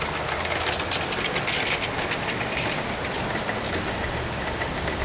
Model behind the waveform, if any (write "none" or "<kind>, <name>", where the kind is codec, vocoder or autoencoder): none